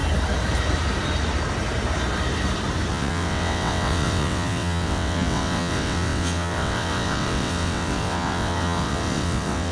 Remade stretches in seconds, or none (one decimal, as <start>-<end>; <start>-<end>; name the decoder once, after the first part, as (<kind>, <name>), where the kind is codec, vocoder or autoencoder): 2.9-9.7 (vocoder, WaveNeXt)